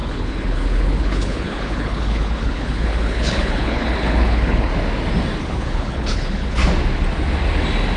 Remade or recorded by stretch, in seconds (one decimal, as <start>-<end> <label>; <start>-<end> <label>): 0.0-4.7 remade; 4.7-5.4 recorded; 5.4-6.6 remade; 6.6-8.0 recorded